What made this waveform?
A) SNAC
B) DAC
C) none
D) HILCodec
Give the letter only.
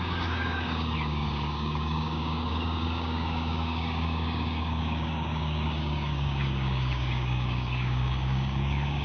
B